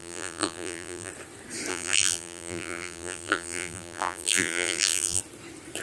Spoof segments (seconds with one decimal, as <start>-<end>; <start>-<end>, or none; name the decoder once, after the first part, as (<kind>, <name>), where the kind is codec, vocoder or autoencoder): 0.0-1.1 (vocoder, BigVGAN v2); 1.7-5.2